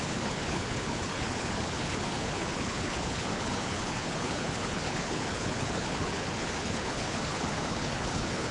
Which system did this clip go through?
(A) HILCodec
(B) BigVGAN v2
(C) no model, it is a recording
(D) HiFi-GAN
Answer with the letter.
A